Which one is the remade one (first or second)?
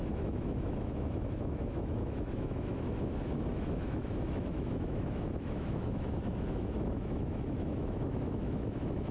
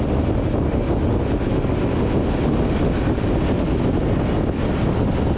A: first